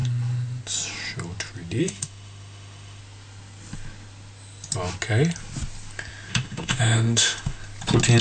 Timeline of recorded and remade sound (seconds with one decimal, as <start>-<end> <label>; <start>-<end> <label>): 0.0-1.8 recorded; 1.8-3.0 remade; 3.0-6.3 recorded; 6.3-7.6 remade; 7.6-8.2 recorded